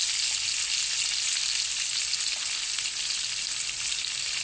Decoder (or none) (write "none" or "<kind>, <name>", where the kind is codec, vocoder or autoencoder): none